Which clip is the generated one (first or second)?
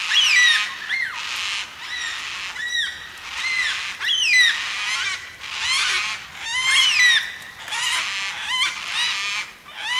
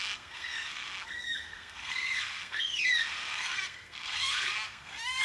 second